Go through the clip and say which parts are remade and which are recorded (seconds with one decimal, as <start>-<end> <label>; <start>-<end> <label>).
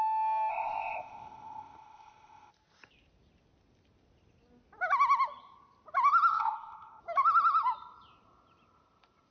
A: 0.0-0.5 recorded; 0.5-2.5 remade; 2.5-6.3 recorded; 6.3-7.0 remade; 7.0-9.3 recorded